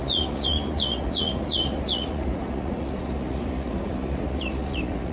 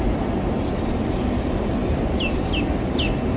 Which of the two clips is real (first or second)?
second